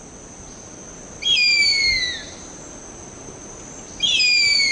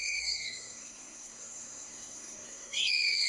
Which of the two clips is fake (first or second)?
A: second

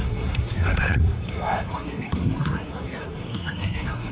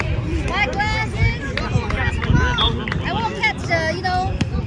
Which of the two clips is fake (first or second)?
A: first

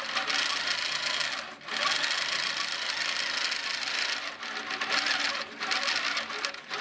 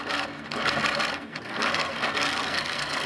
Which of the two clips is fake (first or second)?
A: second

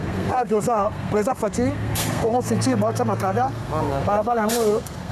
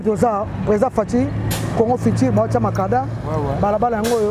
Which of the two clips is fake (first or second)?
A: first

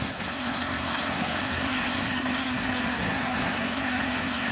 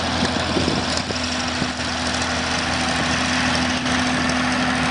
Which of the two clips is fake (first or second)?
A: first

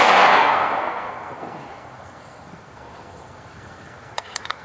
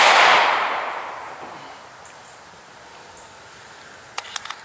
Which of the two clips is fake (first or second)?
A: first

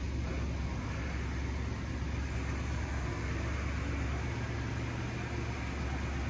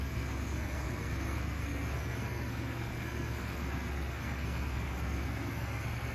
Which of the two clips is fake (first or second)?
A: second